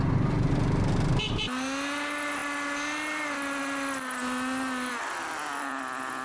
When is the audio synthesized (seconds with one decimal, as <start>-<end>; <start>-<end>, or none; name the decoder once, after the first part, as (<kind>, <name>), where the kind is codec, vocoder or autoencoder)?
none